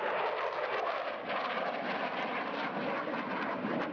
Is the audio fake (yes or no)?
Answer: no